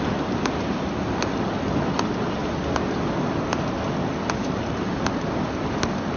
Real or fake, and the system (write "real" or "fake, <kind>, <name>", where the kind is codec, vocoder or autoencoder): real